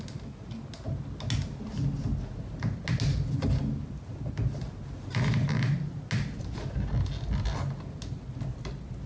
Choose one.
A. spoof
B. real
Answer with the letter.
B